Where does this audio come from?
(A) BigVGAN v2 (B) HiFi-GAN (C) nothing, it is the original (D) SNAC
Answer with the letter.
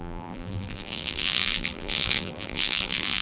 A